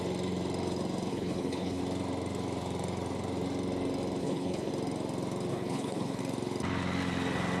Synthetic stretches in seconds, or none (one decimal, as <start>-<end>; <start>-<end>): 1.1-1.8; 4.2-4.7; 5.5-6.2